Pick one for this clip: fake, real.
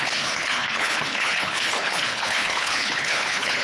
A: fake